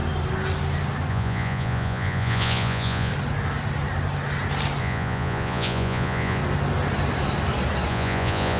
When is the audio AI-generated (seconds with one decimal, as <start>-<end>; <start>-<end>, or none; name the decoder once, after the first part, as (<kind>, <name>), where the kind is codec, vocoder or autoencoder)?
1.1-3.1 (vocoder, Vocos); 4.8-6.4; 7.9-8.6